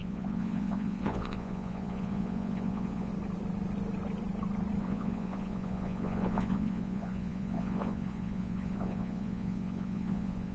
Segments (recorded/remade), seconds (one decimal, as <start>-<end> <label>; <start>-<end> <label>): 0.0-3.1 remade; 3.1-4.8 recorded; 4.8-10.5 remade